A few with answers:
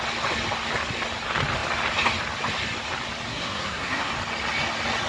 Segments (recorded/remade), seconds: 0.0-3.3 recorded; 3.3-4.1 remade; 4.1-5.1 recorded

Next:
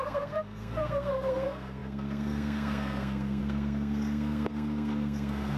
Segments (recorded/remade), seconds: 0.0-5.6 remade

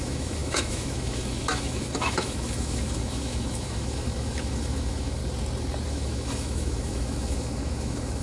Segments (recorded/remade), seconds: 0.0-5.2 remade; 5.2-5.9 recorded; 5.9-8.2 remade